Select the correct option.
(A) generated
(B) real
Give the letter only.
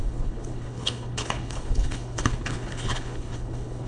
A